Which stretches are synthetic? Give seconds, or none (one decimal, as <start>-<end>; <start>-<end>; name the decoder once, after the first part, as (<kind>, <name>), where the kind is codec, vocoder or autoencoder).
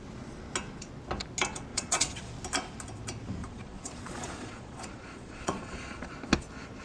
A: 1.7-2.3 (vocoder, Vocos); 3.4-6.1